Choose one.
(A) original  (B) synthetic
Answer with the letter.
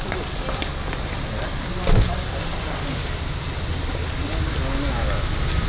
A